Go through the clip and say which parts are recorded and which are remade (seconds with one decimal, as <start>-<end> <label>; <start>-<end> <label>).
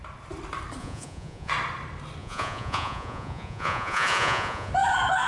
0.0-0.8 recorded; 0.8-1.5 remade; 1.5-2.2 recorded; 2.2-4.7 remade; 4.7-5.3 recorded